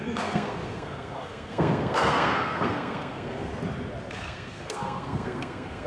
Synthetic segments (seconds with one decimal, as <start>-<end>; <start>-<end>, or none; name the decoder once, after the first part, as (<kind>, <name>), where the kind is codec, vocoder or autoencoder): 0.0-3.5 (codec, SNAC); 4.1-5.9